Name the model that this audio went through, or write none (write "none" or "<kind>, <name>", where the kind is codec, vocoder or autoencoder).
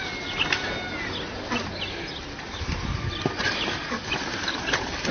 none